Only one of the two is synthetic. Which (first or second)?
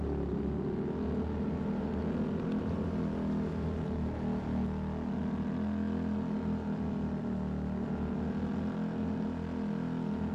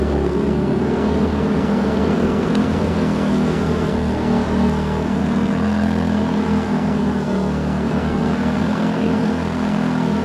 second